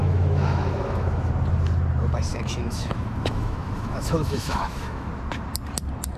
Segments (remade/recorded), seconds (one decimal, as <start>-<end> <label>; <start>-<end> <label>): 0.0-1.3 remade; 1.3-2.3 recorded; 2.3-5.1 remade; 5.1-6.2 recorded